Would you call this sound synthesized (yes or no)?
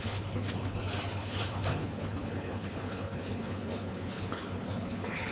yes